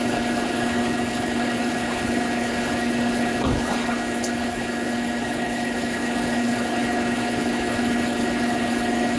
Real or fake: fake